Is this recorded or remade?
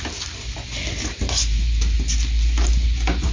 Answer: recorded